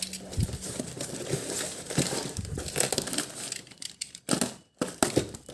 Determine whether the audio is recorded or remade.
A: recorded